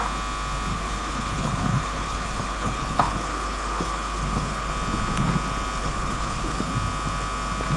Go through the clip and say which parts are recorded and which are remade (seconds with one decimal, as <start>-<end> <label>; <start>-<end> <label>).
0.0-0.7 recorded; 0.7-4.7 remade; 4.7-5.8 recorded; 5.8-6.7 remade; 6.7-7.8 recorded